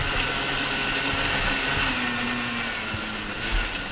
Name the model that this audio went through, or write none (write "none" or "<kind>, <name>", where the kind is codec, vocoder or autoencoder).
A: none